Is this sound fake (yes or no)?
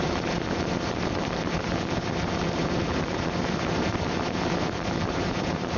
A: yes